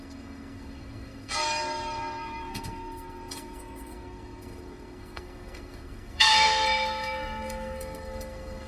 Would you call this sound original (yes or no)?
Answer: no